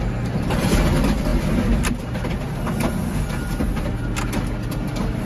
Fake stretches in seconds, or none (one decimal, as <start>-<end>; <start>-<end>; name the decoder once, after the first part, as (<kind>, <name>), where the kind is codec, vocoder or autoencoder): none